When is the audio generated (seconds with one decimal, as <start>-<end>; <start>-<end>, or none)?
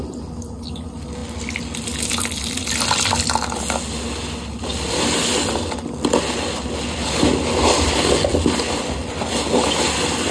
none